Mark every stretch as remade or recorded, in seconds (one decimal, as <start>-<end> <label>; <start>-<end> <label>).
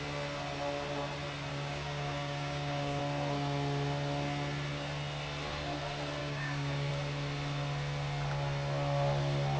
0.0-1.5 recorded; 1.5-3.0 remade; 3.0-6.2 recorded; 6.2-6.9 remade; 6.9-9.6 recorded